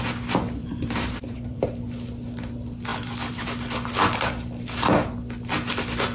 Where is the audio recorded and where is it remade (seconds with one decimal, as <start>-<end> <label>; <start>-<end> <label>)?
0.0-0.6 recorded; 0.6-1.6 remade; 1.6-6.1 recorded